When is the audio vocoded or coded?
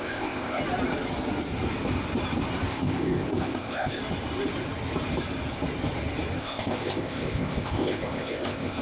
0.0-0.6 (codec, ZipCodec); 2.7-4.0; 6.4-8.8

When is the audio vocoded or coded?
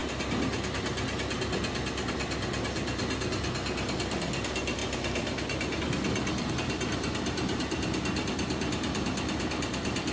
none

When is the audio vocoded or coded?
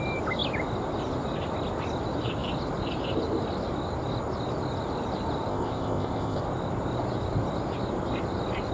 5.5-6.4 (codec, ZipCodec)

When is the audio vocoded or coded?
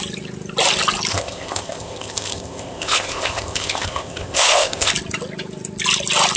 1.1-4.9 (codec, ZipCodec)